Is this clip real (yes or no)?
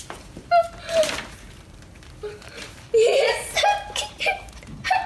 no